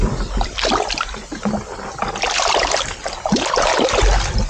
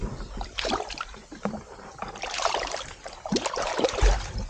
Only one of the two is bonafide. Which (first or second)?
first